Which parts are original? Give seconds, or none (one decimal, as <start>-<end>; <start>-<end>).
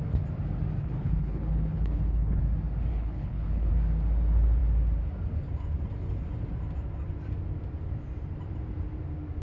0.0-0.8; 2.4-2.9; 3.7-9.4